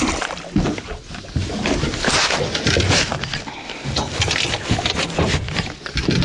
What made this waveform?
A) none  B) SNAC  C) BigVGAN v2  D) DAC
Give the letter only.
A